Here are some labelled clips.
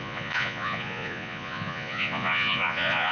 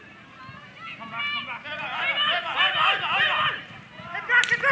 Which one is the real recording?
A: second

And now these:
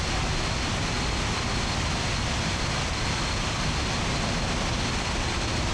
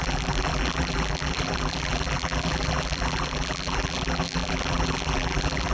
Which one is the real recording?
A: first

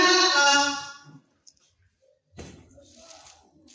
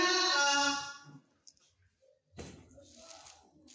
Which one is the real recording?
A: second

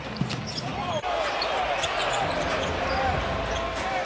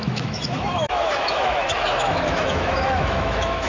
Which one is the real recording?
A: first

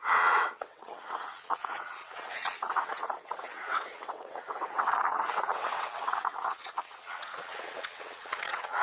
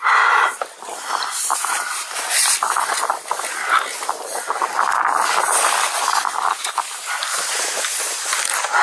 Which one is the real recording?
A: second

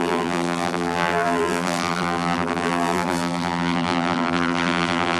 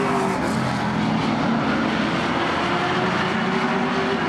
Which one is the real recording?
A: second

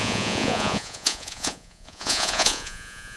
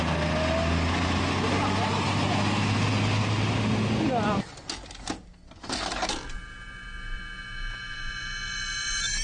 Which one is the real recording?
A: second